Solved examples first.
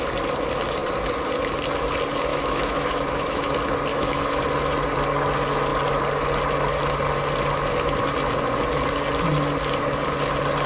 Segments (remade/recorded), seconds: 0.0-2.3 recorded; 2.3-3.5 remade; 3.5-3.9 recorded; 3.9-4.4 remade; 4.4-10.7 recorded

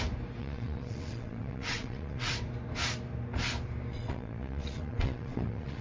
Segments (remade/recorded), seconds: 0.0-0.4 recorded; 0.4-2.3 remade; 2.3-3.9 recorded; 3.9-5.8 remade

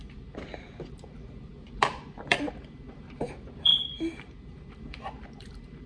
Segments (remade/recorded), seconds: 0.0-5.9 remade

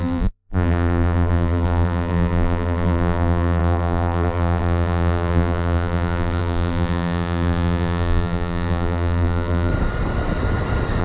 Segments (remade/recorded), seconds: 0.0-9.7 remade; 9.7-11.0 recorded